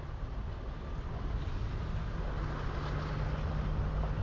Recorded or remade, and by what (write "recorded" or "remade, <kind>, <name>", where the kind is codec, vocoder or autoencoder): recorded